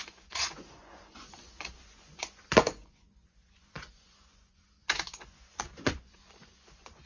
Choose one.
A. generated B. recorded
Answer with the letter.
A